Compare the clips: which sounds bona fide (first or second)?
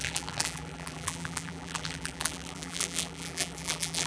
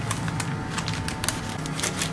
second